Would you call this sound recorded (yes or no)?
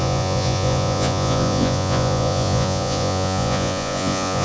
no